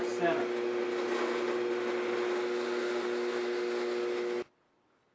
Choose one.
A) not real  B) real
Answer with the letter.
B